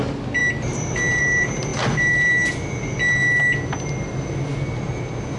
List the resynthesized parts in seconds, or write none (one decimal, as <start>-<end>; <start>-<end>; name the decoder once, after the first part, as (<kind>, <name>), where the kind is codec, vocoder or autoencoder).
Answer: none